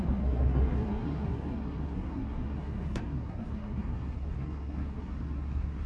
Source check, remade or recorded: remade